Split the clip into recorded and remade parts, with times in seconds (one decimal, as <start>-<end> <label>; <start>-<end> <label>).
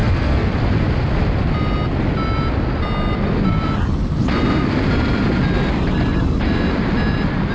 0.0-0.5 remade; 0.5-7.5 recorded